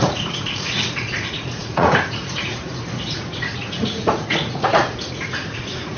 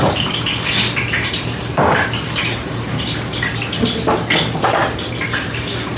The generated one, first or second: first